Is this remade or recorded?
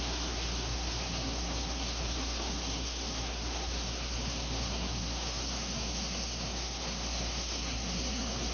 remade